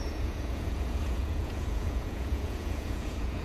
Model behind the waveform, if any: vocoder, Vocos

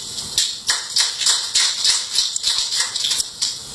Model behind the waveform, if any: none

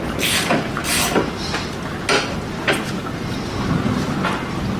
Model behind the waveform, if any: none